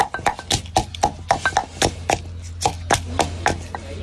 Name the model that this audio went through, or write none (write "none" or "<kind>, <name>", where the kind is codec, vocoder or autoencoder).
none